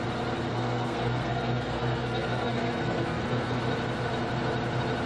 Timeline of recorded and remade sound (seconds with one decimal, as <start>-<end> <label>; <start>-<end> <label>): 0.0-0.5 recorded; 0.5-3.6 remade; 3.6-5.1 recorded